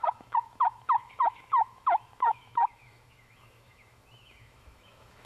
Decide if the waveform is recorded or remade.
remade